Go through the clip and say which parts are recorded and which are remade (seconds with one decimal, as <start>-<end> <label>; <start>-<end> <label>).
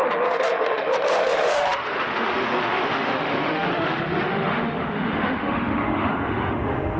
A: 0.0-7.0 remade